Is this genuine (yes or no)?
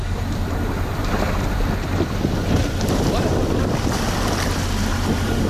no